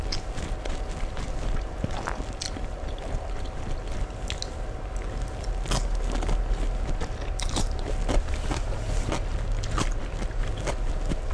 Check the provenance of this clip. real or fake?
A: real